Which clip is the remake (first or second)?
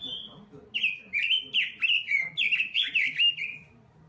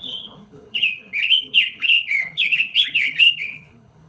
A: second